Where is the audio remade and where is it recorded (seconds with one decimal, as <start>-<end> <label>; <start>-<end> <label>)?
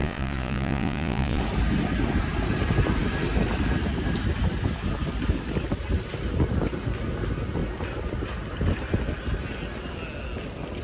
0.0-1.4 remade; 1.4-10.8 recorded